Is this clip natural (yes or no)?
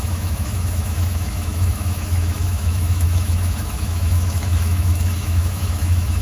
no